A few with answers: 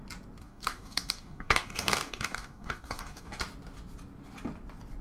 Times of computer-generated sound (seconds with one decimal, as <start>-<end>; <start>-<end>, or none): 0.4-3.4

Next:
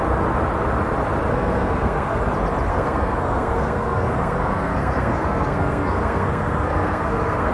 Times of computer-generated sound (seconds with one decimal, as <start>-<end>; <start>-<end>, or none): 1.3-2.2; 2.7-7.5

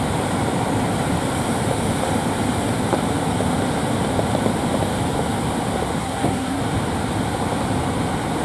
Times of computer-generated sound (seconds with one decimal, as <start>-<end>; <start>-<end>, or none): 6.0-6.6

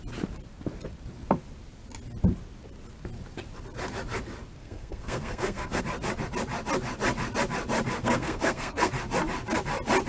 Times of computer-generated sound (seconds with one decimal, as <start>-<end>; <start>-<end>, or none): 4.6-5.8; 8.0-8.9

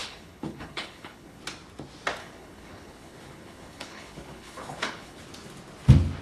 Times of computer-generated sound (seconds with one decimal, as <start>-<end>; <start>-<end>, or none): 0.0-1.4; 2.2-5.2

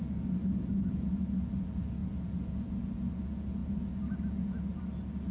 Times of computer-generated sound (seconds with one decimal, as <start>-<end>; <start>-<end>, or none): none